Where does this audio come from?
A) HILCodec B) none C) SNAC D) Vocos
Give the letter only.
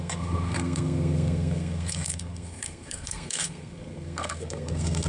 C